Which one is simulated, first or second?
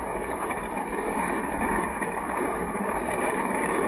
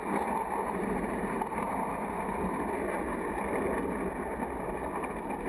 first